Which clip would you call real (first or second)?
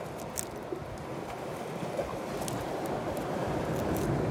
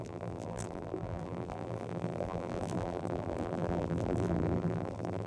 first